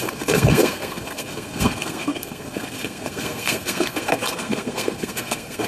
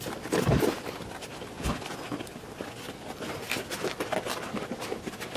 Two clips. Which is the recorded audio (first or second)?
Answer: second